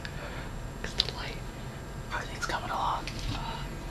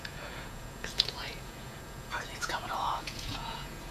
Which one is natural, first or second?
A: first